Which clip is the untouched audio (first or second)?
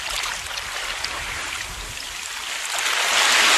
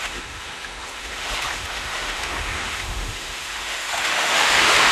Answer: first